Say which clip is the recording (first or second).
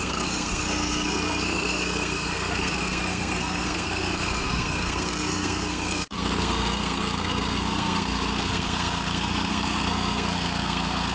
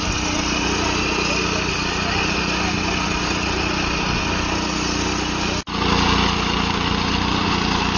second